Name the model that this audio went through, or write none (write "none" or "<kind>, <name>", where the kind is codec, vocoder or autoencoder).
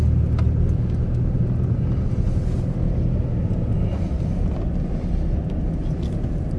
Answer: none